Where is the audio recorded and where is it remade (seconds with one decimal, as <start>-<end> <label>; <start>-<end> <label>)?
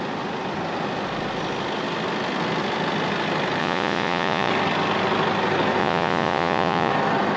0.0-3.6 recorded; 3.6-4.5 remade; 4.5-5.8 recorded; 5.8-6.9 remade; 6.9-7.4 recorded